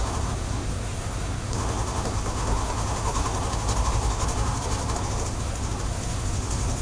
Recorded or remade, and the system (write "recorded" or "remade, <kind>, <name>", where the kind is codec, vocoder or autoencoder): remade, codec, SNAC